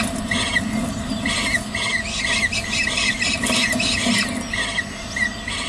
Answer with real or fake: real